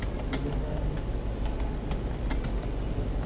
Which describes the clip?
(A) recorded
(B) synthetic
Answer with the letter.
A